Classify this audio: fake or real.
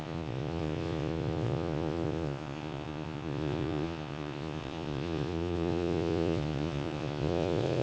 fake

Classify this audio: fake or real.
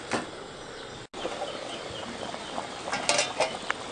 real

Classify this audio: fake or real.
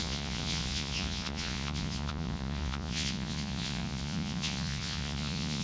fake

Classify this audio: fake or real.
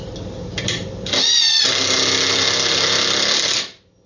real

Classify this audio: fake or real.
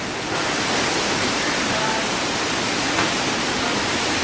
real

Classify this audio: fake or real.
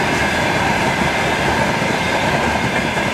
real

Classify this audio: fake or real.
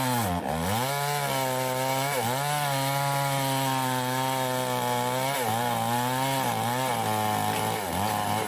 real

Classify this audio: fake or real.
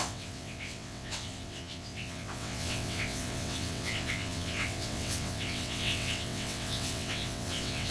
fake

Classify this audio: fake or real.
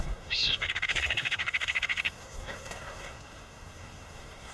fake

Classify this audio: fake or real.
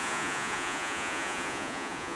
fake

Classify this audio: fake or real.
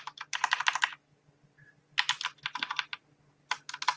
real